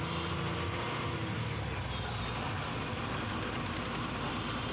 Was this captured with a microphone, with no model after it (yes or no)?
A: yes